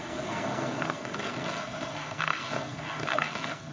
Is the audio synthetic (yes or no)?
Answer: yes